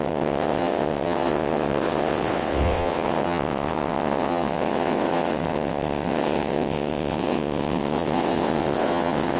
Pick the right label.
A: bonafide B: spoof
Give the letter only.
B